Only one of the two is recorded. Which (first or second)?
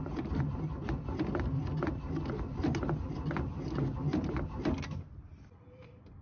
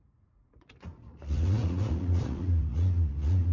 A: first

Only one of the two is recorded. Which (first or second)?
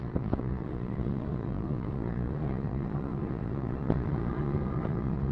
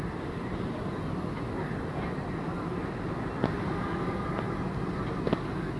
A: second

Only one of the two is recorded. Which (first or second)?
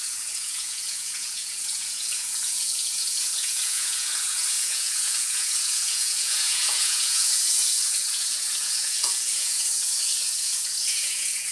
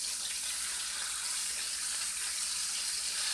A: second